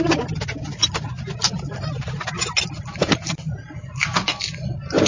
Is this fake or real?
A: real